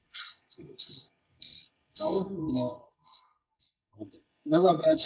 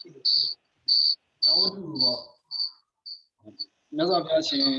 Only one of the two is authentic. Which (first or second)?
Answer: second